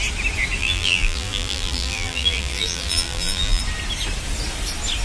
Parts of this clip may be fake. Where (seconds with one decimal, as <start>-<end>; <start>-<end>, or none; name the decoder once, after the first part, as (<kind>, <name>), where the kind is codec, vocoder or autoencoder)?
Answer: 0.6-3.6 (vocoder, BigVGAN v2)